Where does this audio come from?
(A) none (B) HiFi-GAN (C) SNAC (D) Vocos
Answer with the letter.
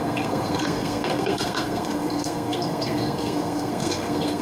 C